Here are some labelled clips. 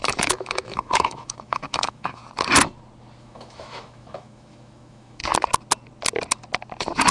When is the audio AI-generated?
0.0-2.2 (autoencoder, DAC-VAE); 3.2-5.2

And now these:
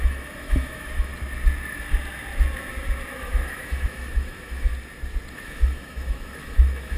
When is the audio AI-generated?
0.0-1.1 (autoencoder, DAC-VAE); 3.2-4.7; 5.3-7.0

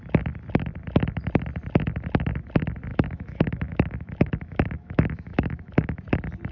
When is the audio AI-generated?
2.9-6.0 (autoencoder, DAC-VAE)

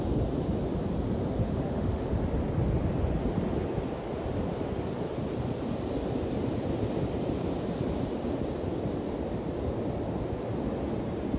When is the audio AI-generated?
1.4-2.1 (autoencoder, DAC-VAE)

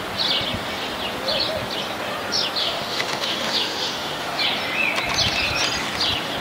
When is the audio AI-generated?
2.6-4.4 (autoencoder, DAC-VAE)

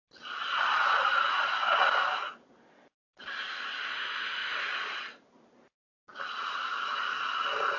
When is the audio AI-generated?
3.9-4.6 (autoencoder, DAC-VAE)

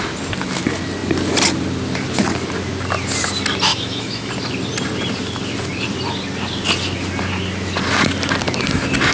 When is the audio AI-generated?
3.7-4.3 (autoencoder, DAC-VAE)

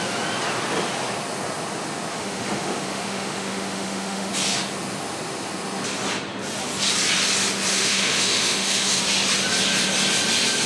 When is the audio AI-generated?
2.1-4.3 (autoencoder, DAC-VAE); 7.7-9.0